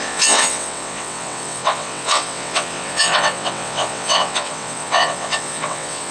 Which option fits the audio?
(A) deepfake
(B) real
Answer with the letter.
A